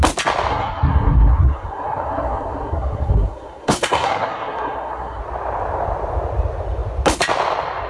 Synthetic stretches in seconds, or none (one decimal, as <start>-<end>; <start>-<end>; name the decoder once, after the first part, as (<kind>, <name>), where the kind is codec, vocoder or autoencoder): 0.5-5.2 (codec, SNAC)